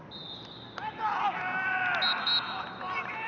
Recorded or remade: recorded